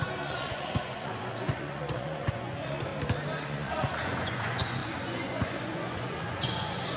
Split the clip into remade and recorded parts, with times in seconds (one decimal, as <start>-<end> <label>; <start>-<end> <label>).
0.0-2.9 remade; 2.9-3.4 recorded; 3.4-7.0 remade